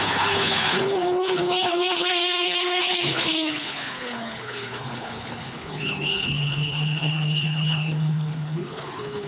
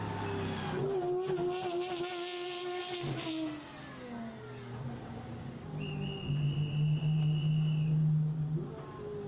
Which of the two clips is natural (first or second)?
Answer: second